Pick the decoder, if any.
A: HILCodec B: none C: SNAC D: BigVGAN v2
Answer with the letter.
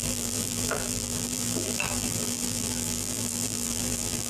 D